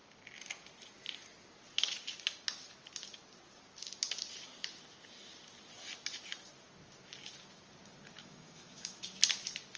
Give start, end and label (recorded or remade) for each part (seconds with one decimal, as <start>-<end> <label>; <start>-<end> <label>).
0.0-8.2 recorded; 8.2-9.0 remade; 9.0-9.8 recorded